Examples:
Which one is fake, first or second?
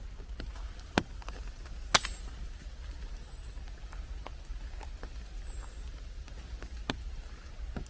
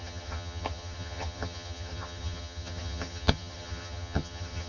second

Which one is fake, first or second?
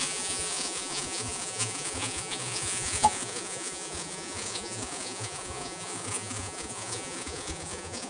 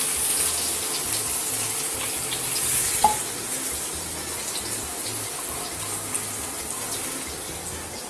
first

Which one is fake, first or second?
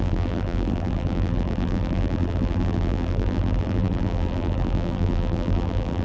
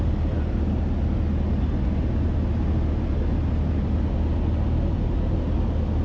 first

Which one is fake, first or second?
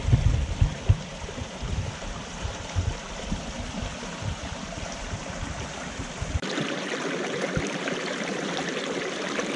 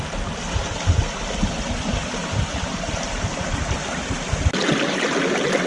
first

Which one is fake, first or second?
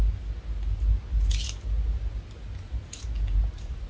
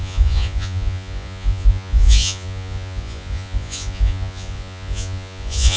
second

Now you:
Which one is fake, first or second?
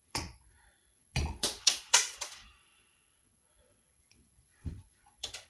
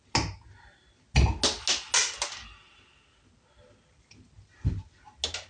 first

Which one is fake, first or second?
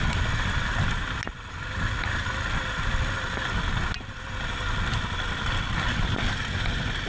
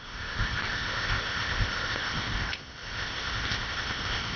second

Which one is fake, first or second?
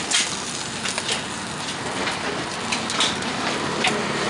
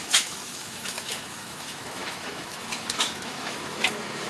second